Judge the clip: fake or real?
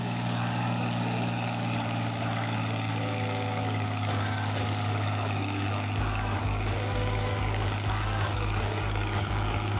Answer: fake